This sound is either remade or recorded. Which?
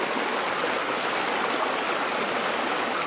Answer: recorded